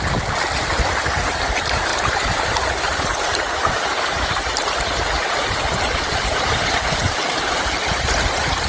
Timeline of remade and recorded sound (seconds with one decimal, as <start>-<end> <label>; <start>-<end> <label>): 0.0-1.9 recorded; 1.9-6.6 remade; 6.6-7.0 recorded; 7.0-7.9 remade; 7.9-8.7 recorded